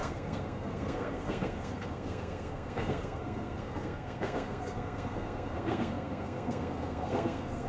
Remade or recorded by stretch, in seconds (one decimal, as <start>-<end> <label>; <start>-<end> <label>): 0.0-7.7 remade